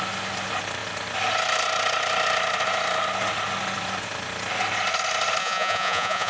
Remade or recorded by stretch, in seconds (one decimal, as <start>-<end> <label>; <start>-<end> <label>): 0.0-5.4 recorded; 5.4-6.3 remade